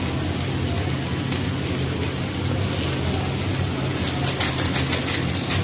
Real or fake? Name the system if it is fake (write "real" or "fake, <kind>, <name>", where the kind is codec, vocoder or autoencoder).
real